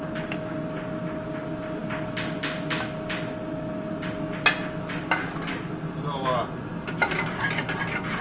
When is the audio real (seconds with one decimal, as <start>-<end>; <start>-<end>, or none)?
0.0-8.2